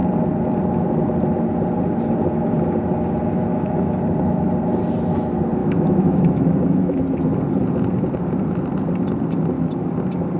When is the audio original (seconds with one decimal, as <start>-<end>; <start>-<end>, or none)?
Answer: 0.0-3.5; 4.0-5.6; 7.0-10.4